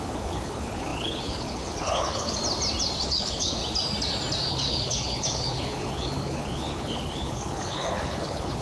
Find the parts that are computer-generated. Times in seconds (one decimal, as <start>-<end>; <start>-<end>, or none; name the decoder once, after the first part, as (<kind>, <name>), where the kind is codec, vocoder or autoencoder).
0.0-2.4 (codec, HILCodec); 3.0-3.6; 4.5-8.6